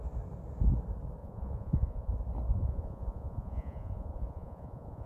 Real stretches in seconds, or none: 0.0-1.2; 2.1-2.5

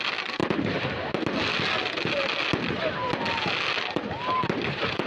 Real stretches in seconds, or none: 0.0-5.1